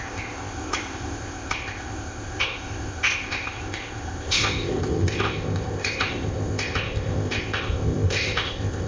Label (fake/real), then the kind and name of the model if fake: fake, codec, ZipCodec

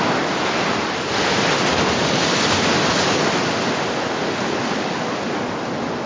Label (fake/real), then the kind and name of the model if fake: real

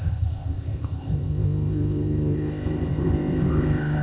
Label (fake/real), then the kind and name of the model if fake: fake, codec, ZipCodec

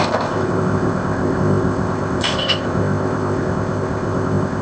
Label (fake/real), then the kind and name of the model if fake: fake, codec, ZipCodec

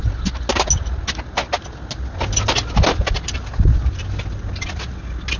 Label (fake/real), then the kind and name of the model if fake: real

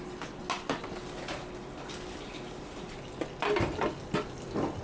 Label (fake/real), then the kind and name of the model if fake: real